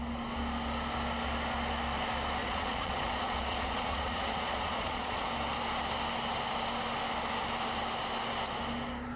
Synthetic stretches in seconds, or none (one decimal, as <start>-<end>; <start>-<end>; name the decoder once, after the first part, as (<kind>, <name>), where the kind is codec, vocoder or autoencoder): 2.4-5.3 (vocoder, Vocos)